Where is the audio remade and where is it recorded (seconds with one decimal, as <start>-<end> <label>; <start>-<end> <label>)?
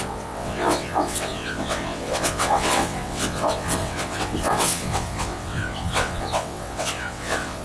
0.0-7.6 remade